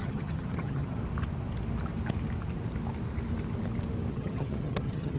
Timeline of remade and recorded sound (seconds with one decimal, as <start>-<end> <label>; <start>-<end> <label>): 0.0-1.0 remade; 1.0-4.1 recorded; 4.1-5.2 remade